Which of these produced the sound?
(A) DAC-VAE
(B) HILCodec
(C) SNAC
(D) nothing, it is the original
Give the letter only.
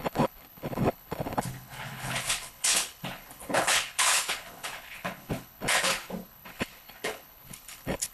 B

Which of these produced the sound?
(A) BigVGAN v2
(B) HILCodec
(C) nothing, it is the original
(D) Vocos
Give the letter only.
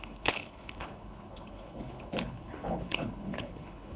B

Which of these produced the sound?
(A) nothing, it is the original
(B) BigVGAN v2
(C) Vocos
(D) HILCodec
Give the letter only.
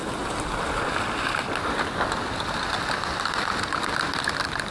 A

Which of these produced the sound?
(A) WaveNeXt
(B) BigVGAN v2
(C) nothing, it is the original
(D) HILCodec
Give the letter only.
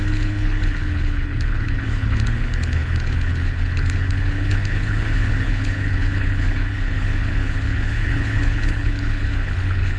D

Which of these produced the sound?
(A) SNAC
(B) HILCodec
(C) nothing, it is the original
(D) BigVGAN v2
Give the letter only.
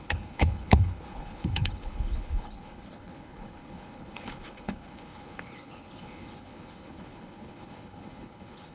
B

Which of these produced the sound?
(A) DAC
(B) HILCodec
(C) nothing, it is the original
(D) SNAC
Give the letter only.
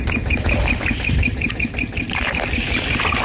C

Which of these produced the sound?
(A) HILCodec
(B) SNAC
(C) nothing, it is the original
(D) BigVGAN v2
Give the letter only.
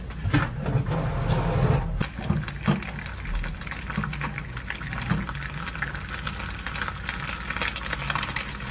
C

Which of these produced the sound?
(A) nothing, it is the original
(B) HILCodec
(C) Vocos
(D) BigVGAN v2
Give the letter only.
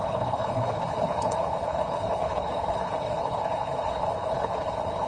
B